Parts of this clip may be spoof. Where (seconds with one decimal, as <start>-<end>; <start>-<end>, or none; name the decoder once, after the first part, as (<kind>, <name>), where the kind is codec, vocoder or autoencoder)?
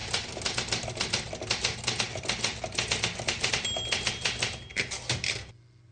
none